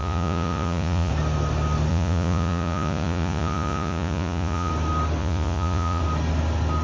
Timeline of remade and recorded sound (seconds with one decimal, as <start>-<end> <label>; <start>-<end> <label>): 0.0-1.1 remade; 1.1-1.9 recorded; 1.9-4.7 remade; 4.7-5.2 recorded; 5.2-6.0 remade; 6.0-6.8 recorded